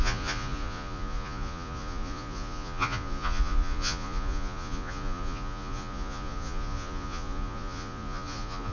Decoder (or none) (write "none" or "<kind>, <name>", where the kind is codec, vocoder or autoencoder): vocoder, Vocos